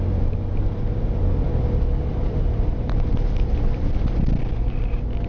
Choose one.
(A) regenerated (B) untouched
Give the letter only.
B